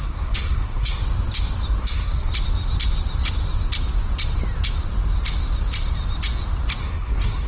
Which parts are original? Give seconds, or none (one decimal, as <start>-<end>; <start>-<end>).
1.0-1.8; 2.3-6.8